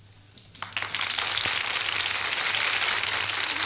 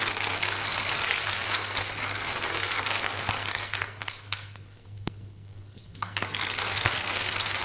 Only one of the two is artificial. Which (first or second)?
second